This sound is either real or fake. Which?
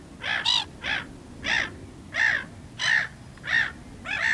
real